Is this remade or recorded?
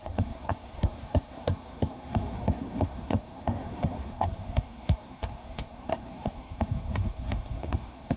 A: remade